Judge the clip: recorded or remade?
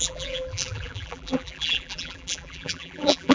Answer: remade